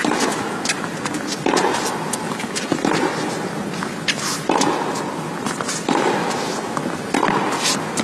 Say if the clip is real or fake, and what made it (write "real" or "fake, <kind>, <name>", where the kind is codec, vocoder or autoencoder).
real